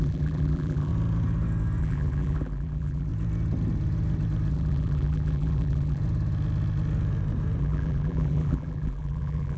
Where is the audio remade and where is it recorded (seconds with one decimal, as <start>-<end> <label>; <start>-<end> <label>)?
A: 0.0-0.9 remade; 0.9-1.8 recorded; 1.8-3.1 remade; 3.1-4.5 recorded; 4.5-6.0 remade; 6.0-7.6 recorded; 7.6-9.6 remade